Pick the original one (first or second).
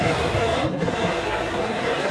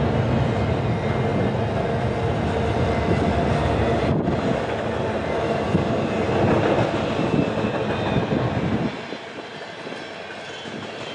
second